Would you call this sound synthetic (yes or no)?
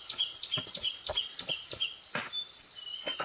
yes